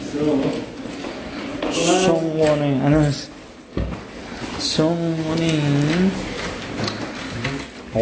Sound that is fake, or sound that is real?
real